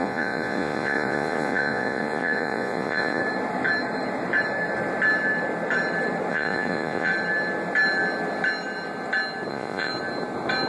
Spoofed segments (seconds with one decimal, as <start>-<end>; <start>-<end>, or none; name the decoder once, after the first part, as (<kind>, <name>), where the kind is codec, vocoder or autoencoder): 0.0-3.2 (vocoder, Vocos); 6.3-7.1; 9.5-9.9